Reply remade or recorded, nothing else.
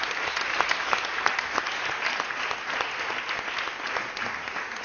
recorded